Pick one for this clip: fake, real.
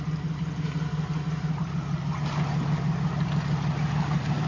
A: real